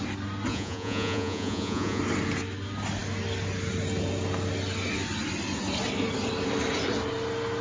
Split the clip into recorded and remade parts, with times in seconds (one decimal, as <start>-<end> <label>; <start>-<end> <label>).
0.0-0.5 recorded; 0.5-2.0 remade; 2.0-7.6 recorded